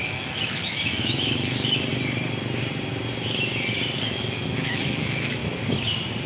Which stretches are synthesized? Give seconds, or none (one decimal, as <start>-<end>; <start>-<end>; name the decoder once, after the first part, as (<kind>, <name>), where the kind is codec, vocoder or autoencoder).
0.0-1.9 (autoencoder, DAC-VAE); 4.0-5.4